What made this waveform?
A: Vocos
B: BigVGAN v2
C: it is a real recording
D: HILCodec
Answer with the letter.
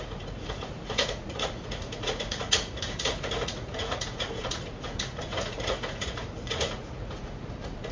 A